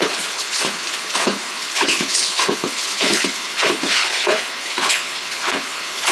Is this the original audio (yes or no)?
no